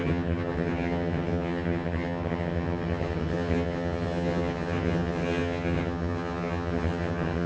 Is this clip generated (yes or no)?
yes